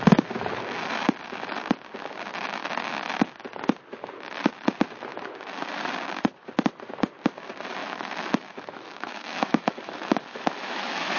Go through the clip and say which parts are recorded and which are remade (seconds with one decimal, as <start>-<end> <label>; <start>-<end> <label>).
0.0-5.1 recorded; 5.1-5.7 remade; 5.7-7.8 recorded; 7.8-11.2 remade